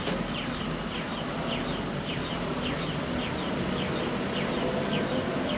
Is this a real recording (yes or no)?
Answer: yes